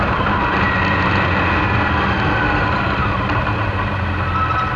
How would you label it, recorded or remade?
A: recorded